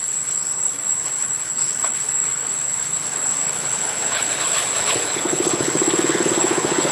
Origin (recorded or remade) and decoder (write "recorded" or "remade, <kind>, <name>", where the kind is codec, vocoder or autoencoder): remade, codec, HILCodec